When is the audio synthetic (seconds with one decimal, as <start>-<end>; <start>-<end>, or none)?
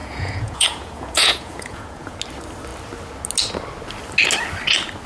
0.0-2.2